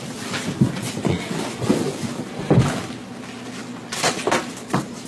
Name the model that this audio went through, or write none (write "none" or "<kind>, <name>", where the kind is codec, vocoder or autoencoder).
none